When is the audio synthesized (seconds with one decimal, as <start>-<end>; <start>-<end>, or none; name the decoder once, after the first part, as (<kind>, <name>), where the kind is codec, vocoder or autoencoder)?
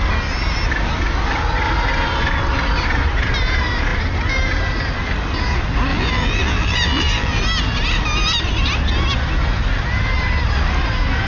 5.9-7.4 (vocoder, BigVGAN v2)